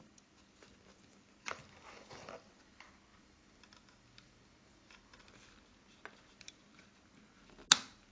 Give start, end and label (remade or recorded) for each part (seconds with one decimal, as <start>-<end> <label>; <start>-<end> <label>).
0.0-1.6 recorded; 1.6-2.3 remade; 2.3-3.1 recorded; 3.1-5.3 remade; 5.3-8.1 recorded